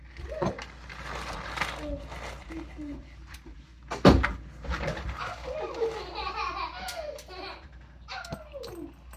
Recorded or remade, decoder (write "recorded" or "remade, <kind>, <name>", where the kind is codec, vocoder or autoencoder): recorded